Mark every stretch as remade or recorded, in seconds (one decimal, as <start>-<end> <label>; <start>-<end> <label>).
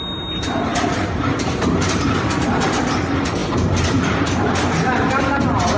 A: 0.0-0.7 recorded; 0.7-2.1 remade; 2.1-3.4 recorded; 3.4-4.5 remade; 4.5-5.8 recorded